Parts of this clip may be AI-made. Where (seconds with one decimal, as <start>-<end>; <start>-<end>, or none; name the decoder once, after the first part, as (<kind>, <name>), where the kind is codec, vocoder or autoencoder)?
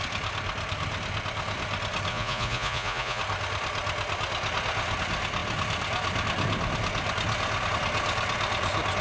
2.1-3.2 (vocoder, Vocos)